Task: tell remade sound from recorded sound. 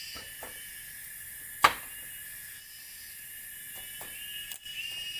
recorded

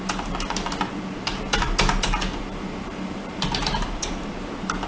remade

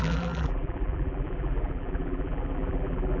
remade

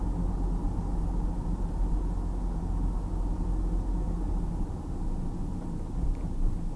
recorded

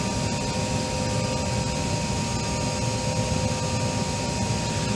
recorded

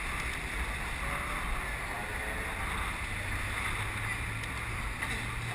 recorded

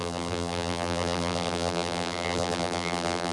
remade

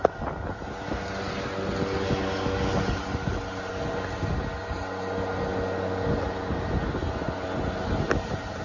recorded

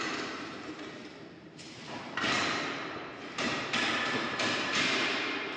remade